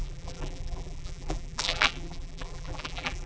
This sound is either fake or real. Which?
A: fake